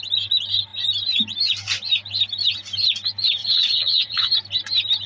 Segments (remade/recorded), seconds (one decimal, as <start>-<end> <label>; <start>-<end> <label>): 0.0-3.4 recorded; 3.4-4.3 remade; 4.3-5.1 recorded